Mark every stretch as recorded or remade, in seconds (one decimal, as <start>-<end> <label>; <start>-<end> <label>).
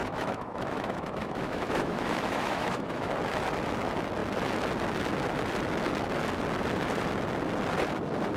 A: 0.0-3.1 remade; 3.1-8.4 recorded